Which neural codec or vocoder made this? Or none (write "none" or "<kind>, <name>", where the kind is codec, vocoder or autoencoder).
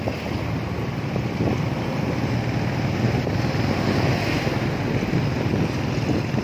none